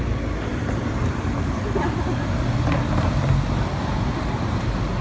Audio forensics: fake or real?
real